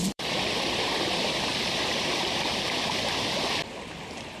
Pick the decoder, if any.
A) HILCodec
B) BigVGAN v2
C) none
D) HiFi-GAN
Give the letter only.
B